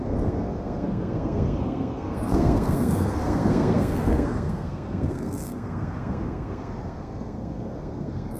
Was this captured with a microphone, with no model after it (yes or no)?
no